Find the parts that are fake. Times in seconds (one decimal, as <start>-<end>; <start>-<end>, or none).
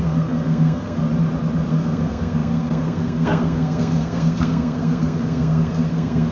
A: 0.0-1.0; 1.7-6.3